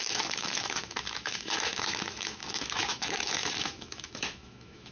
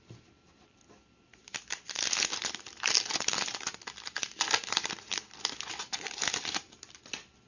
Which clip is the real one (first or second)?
second